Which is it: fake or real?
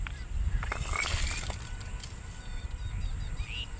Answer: real